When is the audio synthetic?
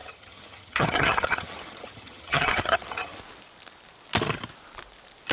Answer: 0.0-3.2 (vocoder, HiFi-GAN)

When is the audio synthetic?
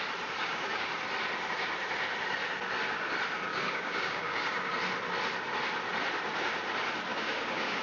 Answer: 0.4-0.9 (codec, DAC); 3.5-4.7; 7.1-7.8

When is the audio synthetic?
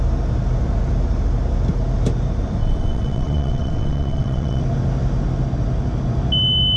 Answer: 2.6-4.6 (vocoder, WaveNeXt)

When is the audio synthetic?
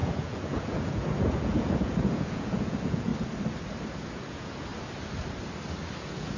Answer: 0.0-3.1 (vocoder, Vocos); 3.9-4.7; 6.0-6.4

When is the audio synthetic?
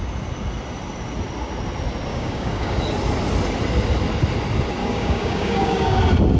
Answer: 2.1-2.8 (codec, DAC); 4.8-6.0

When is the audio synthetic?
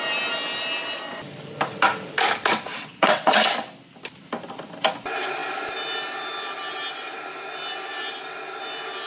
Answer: 2.7-3.5 (vocoder, WaveNeXt)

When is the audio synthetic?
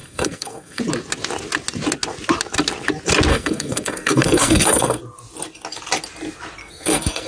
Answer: 0.0-0.8 (codec, SNAC); 3.3-5.0; 6.6-7.3